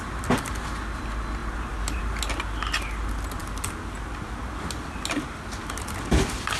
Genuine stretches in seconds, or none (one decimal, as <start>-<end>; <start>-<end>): 0.0-1.4; 2.0-6.6